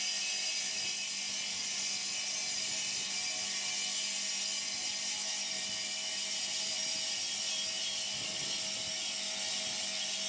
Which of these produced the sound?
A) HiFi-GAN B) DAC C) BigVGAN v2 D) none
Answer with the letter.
D